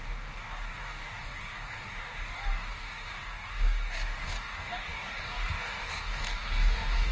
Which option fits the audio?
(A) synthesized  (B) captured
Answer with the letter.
A